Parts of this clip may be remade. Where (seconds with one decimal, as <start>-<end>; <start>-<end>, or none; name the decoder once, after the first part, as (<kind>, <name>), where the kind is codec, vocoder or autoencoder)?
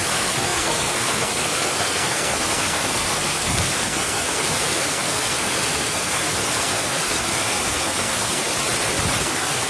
0.0-8.5 (codec, SNAC); 9.2-9.7